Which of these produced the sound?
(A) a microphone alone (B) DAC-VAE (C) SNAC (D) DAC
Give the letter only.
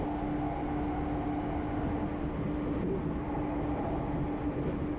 A